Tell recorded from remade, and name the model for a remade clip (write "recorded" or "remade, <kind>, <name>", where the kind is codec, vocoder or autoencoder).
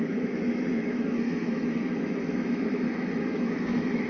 remade, autoencoder, DAC-VAE